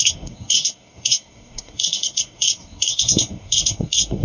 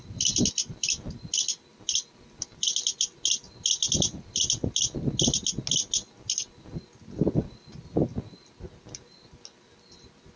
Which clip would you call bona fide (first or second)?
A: second